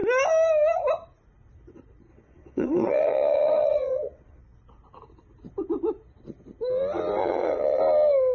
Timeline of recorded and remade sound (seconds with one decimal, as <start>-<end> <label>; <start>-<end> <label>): 0.0-2.1 recorded; 2.1-4.4 remade; 4.4-7.2 recorded; 7.2-7.8 remade; 7.8-8.3 recorded